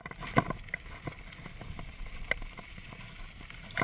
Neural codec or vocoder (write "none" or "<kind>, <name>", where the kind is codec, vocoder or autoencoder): none